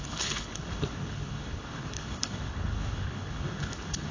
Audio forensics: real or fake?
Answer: fake